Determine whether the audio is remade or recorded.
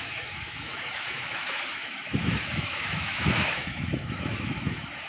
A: remade